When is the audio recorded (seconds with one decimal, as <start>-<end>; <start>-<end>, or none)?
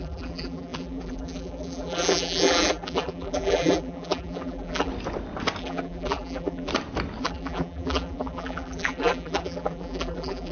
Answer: 4.9-5.6; 6.7-7.2